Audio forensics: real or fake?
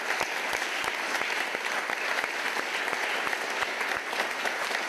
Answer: real